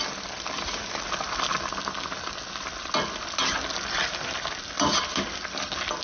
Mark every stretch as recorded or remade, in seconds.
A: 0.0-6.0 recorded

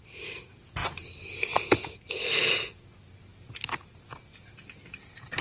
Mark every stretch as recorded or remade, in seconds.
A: 0.0-3.3 recorded; 3.3-4.2 remade; 4.2-5.4 recorded

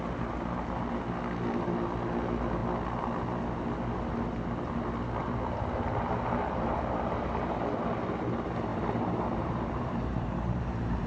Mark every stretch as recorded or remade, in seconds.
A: 0.0-5.2 recorded; 5.2-7.6 remade; 7.6-8.7 recorded; 8.7-11.1 remade

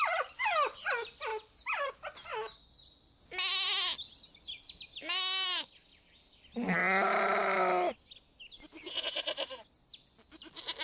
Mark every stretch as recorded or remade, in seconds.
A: 0.0-1.3 recorded; 1.3-1.9 remade; 1.9-10.8 recorded

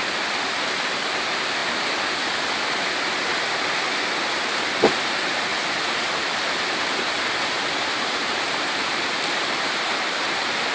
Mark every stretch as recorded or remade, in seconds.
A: 0.0-8.2 recorded; 8.2-10.7 remade

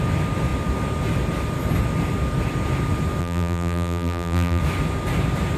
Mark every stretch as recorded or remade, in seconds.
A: 0.0-3.2 recorded; 3.2-4.6 remade; 4.6-5.6 recorded

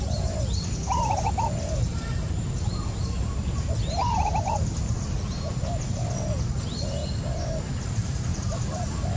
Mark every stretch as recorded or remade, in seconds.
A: 0.0-1.9 recorded; 1.9-6.1 remade; 6.1-8.3 recorded; 8.3-9.2 remade

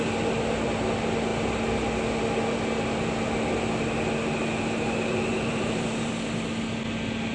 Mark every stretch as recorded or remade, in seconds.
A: 0.0-5.3 recorded; 5.3-6.1 remade; 6.1-7.3 recorded